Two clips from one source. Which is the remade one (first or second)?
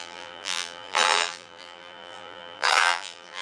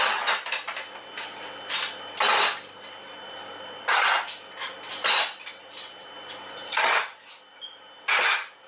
first